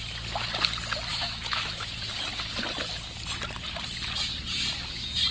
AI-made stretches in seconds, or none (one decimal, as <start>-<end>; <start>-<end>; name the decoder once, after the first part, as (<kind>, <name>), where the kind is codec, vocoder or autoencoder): 1.1-1.9 (autoencoder, DAC-VAE)